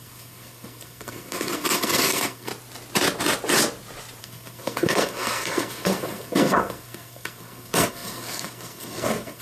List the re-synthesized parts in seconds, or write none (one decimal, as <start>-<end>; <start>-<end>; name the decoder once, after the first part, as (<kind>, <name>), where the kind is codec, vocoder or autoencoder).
0.0-2.5 (codec, SNAC); 4.2-9.4